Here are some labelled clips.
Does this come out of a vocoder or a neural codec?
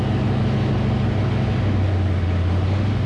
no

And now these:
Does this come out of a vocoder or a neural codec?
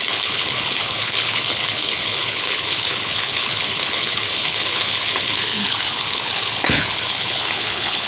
yes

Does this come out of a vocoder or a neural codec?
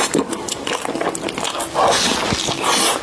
no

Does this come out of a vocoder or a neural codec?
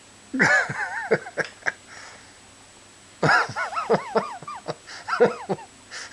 no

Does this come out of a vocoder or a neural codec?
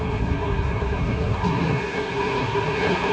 yes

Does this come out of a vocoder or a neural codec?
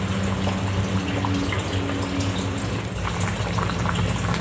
no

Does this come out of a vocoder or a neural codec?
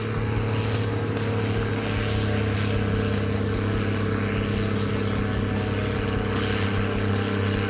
no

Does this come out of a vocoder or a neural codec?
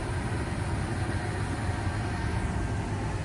no